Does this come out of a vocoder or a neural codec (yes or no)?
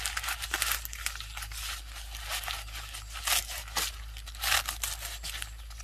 no